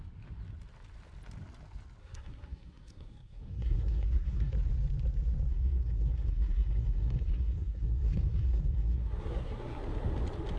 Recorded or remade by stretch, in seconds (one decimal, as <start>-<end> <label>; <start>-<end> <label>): 0.0-2.0 recorded; 2.0-4.5 remade; 4.5-5.5 recorded; 5.5-9.8 remade; 9.8-10.6 recorded